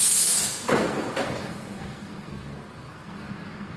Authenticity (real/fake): fake